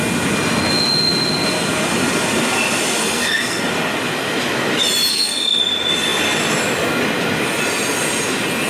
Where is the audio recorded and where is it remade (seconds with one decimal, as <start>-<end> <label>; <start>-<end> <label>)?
0.0-3.0 recorded; 3.0-3.6 remade; 3.6-5.1 recorded; 5.1-5.6 remade; 5.6-8.7 recorded